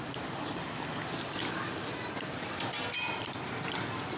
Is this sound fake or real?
real